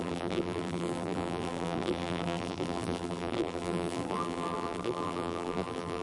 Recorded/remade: remade